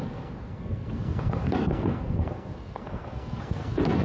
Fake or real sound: fake